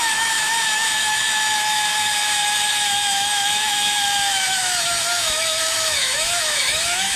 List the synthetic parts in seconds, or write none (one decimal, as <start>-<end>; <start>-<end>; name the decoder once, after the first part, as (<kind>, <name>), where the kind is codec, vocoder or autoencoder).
0.0-7.2 (autoencoder, DAC-VAE)